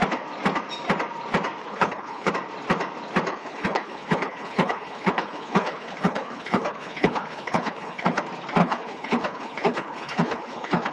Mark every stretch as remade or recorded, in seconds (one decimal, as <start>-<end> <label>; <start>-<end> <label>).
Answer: 0.0-1.6 recorded; 1.6-2.3 remade; 2.3-3.3 recorded; 3.3-8.2 remade; 8.2-8.6 recorded; 8.6-10.9 remade